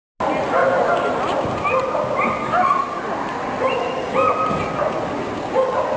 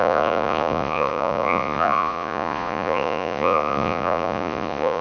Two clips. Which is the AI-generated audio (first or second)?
second